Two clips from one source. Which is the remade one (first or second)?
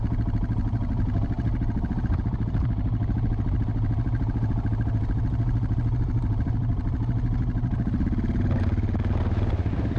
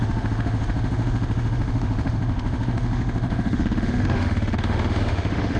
second